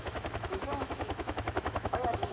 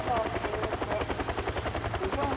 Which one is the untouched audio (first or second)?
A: second